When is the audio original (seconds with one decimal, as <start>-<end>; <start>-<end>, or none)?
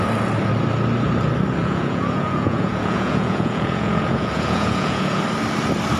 0.0-1.6; 5.2-6.0